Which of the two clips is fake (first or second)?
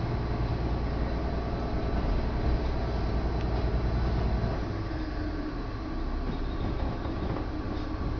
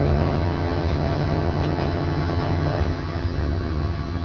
second